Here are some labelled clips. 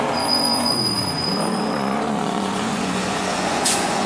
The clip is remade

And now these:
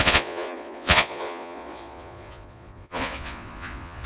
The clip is remade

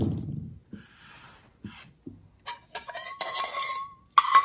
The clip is recorded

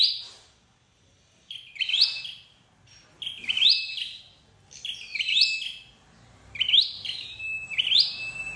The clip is recorded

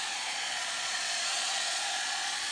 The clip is remade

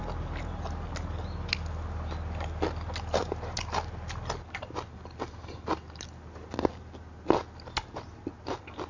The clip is recorded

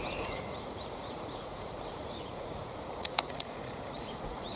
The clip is remade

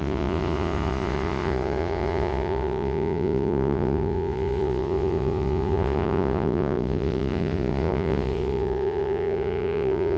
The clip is remade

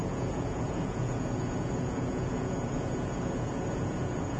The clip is remade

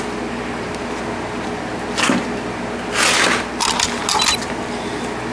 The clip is recorded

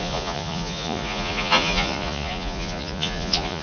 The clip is remade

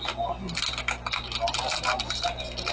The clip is recorded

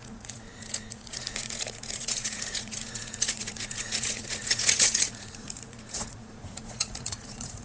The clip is remade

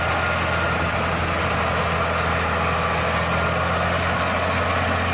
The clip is recorded